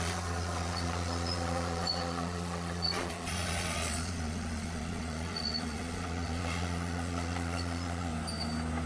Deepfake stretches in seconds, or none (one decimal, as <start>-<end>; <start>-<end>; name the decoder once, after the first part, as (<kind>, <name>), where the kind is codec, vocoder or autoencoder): 0.0-8.1 (vocoder, Vocos)